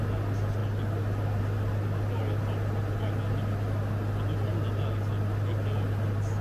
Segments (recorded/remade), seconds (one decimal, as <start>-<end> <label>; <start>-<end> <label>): 0.0-6.4 recorded